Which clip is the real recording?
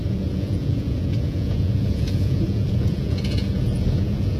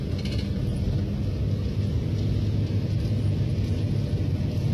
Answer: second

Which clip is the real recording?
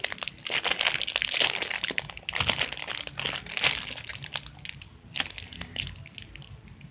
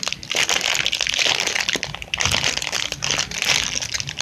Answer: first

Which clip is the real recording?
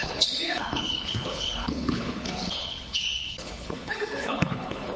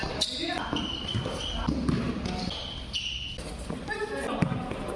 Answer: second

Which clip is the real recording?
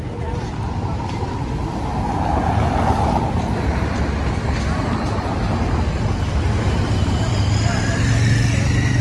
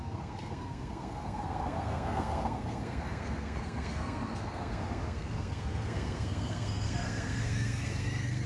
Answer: first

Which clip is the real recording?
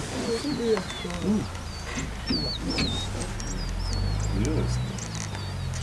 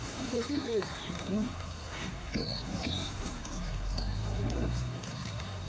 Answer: first